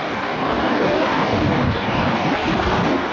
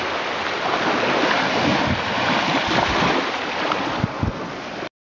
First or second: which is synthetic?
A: first